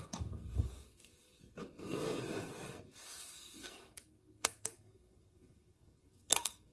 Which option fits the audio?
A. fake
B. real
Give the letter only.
A